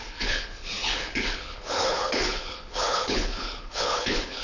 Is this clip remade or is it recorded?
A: remade